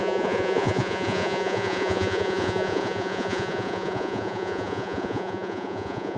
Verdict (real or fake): fake